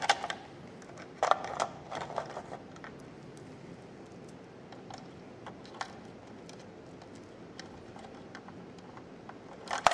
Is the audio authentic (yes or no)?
yes